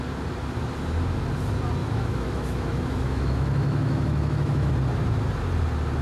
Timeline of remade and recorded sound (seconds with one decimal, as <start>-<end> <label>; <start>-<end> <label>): 0.0-1.8 recorded; 1.8-4.7 remade; 4.7-6.0 recorded